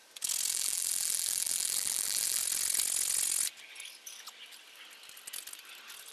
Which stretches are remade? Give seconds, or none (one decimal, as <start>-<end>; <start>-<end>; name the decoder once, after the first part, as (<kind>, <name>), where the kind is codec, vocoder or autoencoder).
0.5-2.4 (vocoder, BigVGAN v2)